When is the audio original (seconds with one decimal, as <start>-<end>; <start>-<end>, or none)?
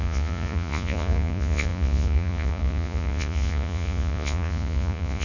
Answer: none